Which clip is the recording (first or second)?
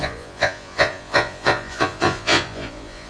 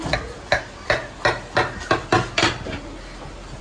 second